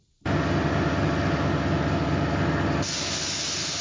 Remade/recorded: recorded